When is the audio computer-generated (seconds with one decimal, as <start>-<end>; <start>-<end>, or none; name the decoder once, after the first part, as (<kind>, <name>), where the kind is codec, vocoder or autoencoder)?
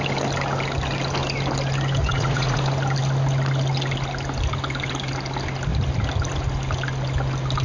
2.0-2.6 (vocoder, Vocos)